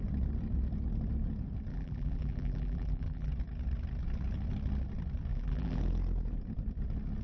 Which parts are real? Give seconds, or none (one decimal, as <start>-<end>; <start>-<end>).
0.0-1.7; 3.3-5.3; 5.8-7.2